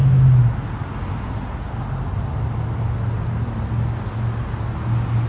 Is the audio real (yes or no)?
yes